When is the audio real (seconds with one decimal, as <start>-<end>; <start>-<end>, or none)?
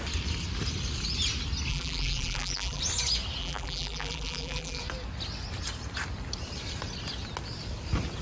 0.0-1.7; 2.8-3.4; 4.8-8.2